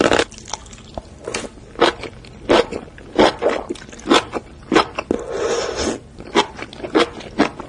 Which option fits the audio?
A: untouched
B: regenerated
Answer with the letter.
A